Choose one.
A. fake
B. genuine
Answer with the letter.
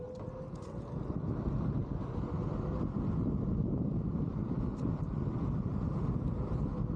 B